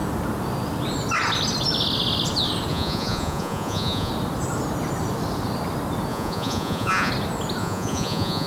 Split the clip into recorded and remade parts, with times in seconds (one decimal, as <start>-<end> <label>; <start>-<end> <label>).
0.0-2.7 recorded; 2.7-4.1 remade; 4.1-6.1 recorded; 6.1-7.1 remade; 7.1-7.6 recorded; 7.6-8.5 remade